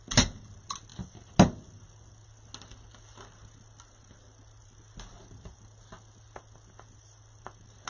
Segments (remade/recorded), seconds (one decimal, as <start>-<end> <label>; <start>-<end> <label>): 0.0-7.9 recorded